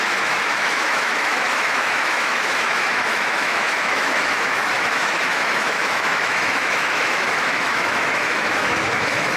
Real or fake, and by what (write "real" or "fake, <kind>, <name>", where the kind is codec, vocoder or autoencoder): fake, autoencoder, DAC-VAE